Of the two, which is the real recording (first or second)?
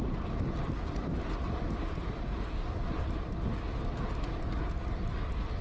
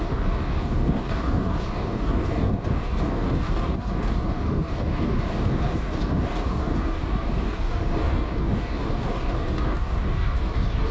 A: first